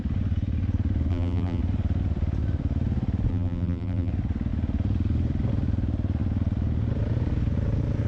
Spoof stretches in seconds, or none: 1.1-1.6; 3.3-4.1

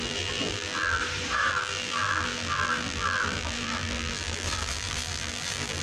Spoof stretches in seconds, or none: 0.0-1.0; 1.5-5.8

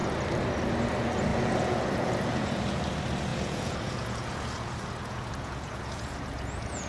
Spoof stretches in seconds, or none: 1.3-2.8; 3.3-6.9